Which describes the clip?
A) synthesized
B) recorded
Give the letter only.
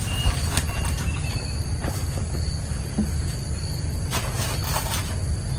B